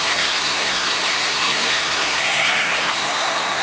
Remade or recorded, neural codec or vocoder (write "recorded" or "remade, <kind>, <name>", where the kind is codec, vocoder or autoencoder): remade, codec, SNAC